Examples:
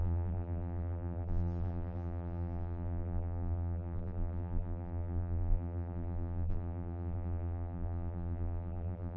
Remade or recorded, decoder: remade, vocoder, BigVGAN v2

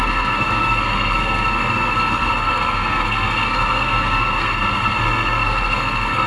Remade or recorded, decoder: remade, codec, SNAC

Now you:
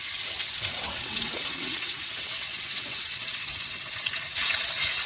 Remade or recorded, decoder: remade, vocoder, WaveNeXt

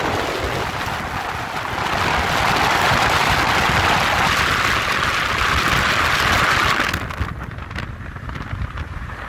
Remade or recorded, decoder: recorded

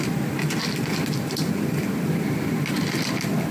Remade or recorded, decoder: remade, vocoder, BigVGAN v2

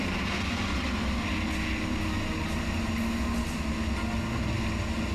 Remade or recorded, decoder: recorded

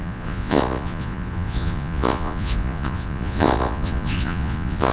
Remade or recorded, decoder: remade, vocoder, Vocos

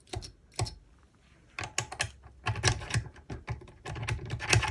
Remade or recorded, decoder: recorded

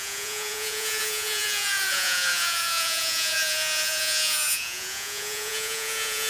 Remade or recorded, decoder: remade, vocoder, Vocos